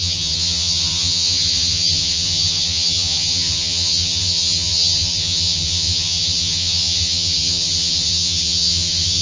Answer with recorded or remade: remade